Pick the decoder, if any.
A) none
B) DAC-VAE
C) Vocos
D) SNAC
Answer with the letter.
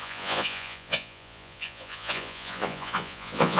C